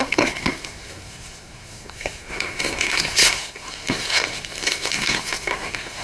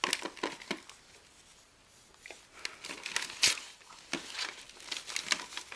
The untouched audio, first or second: second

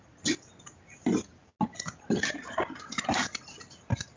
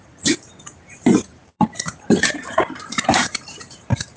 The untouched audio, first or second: first